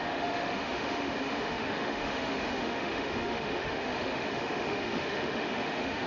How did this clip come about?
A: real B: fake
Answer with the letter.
B